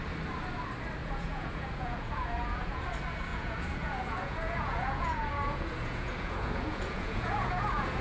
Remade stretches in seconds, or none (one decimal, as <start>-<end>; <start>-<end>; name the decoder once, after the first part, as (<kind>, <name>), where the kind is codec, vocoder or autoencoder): 1.0-2.8 (vocoder, Vocos); 3.3-8.0